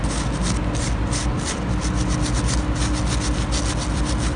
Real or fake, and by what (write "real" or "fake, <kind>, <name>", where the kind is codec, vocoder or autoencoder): real